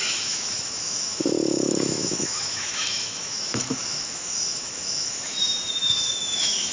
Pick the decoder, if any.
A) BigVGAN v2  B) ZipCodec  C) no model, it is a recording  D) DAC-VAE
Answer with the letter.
D